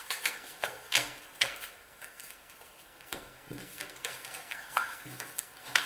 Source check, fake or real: fake